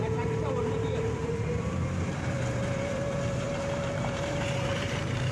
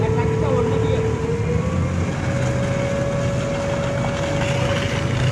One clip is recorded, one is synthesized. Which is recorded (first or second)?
second